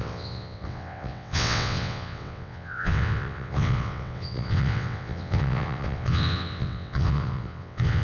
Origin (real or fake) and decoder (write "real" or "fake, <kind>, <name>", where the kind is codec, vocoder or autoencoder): fake, vocoder, WaveNeXt